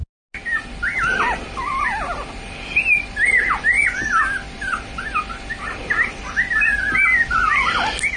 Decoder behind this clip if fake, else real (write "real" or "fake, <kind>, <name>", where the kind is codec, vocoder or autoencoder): real